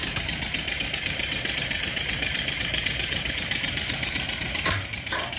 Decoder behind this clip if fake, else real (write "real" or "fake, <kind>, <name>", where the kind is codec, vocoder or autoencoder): fake, vocoder, BigVGAN v2